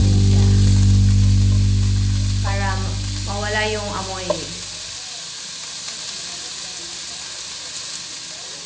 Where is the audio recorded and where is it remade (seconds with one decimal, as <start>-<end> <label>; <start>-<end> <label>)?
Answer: 0.0-8.7 recorded